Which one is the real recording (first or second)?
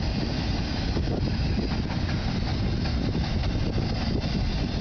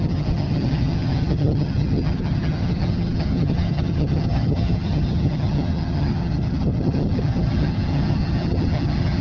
first